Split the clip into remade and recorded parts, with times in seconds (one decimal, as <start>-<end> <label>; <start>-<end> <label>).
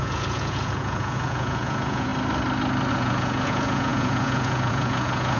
0.0-2.1 remade; 2.1-2.9 recorded; 2.9-5.4 remade